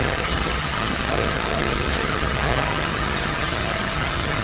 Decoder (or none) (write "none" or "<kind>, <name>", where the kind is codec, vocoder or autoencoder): vocoder, HiFi-GAN